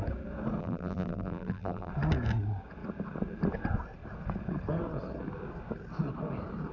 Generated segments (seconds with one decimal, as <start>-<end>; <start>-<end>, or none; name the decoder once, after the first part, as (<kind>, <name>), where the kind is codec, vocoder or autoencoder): 0.6-1.9 (vocoder, BigVGAN v2)